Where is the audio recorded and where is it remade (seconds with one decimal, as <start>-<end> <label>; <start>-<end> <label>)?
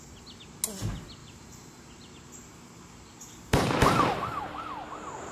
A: 0.0-1.2 recorded; 1.2-4.4 remade; 4.4-5.3 recorded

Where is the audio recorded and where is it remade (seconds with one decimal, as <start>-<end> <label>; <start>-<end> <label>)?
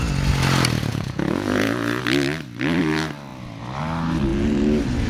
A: 0.0-0.9 recorded; 0.9-2.0 remade; 2.0-5.1 recorded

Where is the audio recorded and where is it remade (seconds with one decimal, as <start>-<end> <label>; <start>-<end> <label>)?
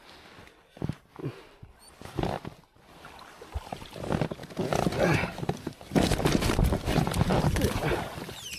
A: 0.0-8.6 recorded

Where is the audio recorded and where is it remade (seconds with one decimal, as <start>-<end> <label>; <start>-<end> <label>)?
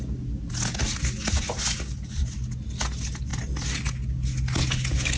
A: 0.0-5.2 recorded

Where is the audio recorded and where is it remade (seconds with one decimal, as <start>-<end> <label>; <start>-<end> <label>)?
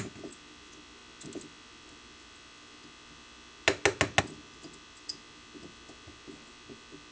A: 0.0-7.1 recorded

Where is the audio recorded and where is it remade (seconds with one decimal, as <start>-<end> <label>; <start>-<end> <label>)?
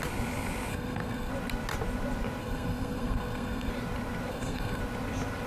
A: 0.0-0.7 recorded; 0.7-1.3 remade; 1.3-2.4 recorded; 2.4-3.7 remade; 3.7-4.3 recorded; 4.3-4.8 remade; 4.8-5.5 recorded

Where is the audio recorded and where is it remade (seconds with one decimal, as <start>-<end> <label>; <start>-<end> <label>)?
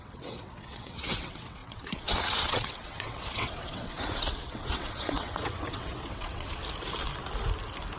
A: 0.0-6.6 remade; 6.6-8.0 recorded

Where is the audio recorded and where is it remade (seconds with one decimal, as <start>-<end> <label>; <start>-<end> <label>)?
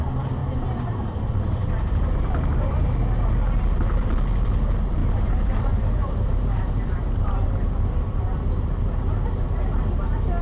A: 0.0-0.4 recorded; 0.4-2.9 remade; 2.9-5.0 recorded; 5.0-8.6 remade; 8.6-10.4 recorded